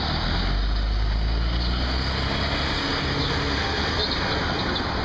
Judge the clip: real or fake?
real